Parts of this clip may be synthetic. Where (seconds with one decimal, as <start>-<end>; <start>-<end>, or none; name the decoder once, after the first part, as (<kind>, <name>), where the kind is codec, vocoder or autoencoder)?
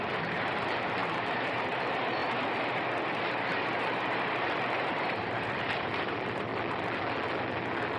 0.0-2.2 (vocoder, BigVGAN v2); 3.2-6.5